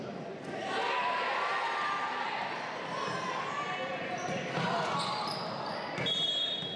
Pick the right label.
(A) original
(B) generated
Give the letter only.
A